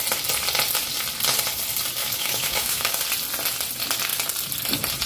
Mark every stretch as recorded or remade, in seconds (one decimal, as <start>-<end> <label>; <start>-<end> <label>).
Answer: 0.0-2.0 recorded; 2.0-3.0 remade; 3.0-5.1 recorded